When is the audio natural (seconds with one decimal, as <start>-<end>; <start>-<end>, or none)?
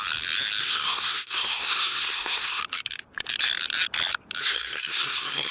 0.0-0.6; 2.6-4.4